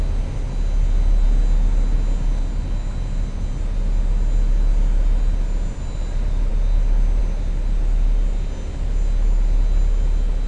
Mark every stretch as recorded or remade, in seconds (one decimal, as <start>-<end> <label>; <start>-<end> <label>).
0.0-10.5 recorded